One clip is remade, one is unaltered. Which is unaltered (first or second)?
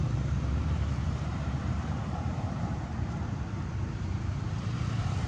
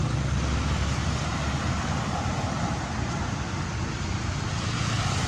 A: second